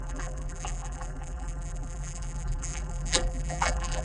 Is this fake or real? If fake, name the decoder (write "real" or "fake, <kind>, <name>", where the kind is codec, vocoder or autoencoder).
fake, vocoder, BigVGAN v2